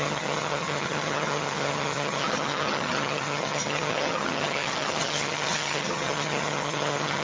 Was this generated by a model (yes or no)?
yes